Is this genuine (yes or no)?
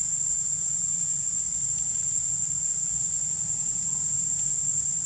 yes